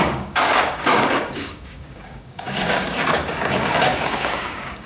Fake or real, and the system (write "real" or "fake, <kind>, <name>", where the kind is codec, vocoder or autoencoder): fake, codec, DAC